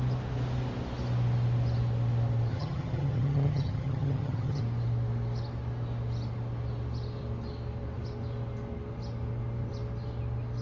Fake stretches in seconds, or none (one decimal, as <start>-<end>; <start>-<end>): 2.5-4.6